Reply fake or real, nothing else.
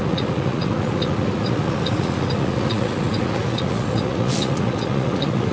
fake